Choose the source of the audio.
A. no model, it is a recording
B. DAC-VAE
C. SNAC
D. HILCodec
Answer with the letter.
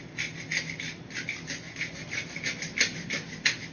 A